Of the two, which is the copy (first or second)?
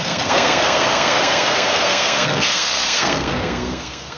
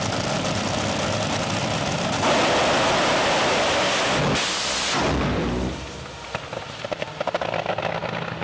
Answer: first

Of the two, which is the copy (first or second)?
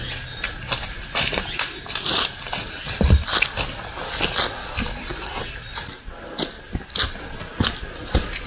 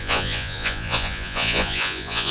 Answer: second